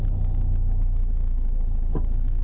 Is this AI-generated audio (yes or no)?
no